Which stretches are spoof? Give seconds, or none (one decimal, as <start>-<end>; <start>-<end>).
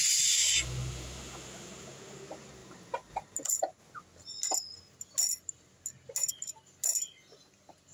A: none